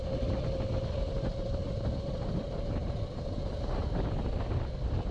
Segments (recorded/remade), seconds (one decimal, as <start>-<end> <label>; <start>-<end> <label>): 0.0-5.1 recorded